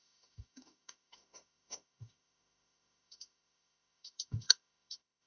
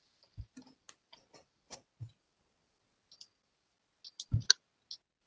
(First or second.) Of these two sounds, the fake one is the first